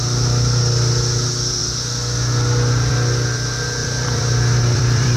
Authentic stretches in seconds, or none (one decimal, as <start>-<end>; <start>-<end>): 0.0-3.8